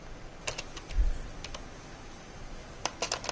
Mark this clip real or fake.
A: real